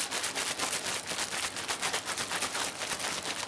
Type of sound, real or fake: real